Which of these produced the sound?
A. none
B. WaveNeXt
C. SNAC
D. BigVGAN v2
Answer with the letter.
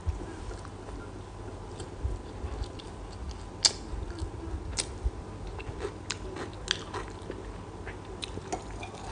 A